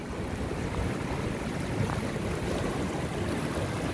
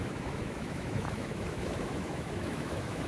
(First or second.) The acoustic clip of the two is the first